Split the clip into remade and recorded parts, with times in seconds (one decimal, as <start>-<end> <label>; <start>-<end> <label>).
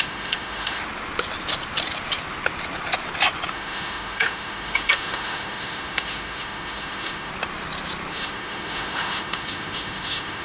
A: 0.0-0.8 remade; 0.8-3.5 recorded; 3.5-7.3 remade; 7.3-8.1 recorded; 8.1-10.4 remade